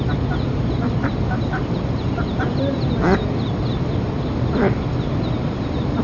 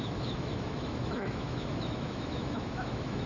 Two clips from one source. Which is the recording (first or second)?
first